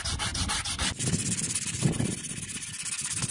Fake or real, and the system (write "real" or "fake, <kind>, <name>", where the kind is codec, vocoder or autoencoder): real